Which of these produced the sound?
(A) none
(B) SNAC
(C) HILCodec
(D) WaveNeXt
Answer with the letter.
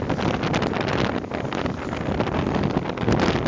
A